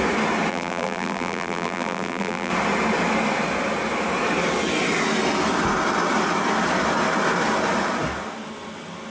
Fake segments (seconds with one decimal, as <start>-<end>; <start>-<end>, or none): 0.5-2.5